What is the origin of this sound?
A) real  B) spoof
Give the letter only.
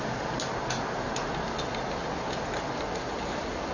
A